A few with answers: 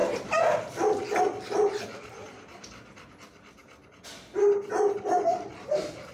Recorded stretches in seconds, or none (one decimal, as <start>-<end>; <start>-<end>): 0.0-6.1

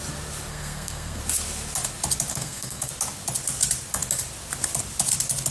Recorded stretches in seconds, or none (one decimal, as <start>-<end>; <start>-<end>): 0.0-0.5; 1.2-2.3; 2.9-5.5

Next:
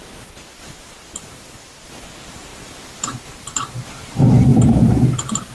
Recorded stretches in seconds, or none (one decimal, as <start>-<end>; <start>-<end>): none

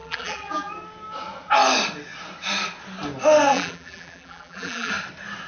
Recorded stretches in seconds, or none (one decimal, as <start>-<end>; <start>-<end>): 0.7-3.5; 4.9-5.5

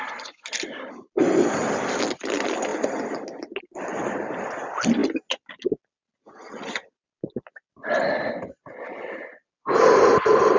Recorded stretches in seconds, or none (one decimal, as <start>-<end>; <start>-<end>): 0.0-10.6

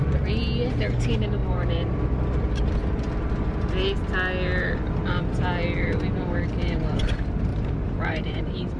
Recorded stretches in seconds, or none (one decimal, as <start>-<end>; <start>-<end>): 0.0-1.4; 2.0-7.5

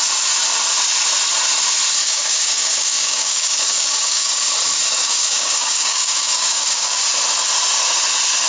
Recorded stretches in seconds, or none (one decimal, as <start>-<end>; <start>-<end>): 0.0-2.0; 4.5-5.0; 7.0-8.5

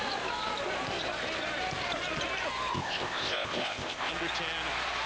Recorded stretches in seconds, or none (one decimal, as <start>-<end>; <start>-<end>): 0.0-2.7; 4.1-5.1